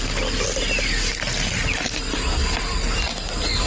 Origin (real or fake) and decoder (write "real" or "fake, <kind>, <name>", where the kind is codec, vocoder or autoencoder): real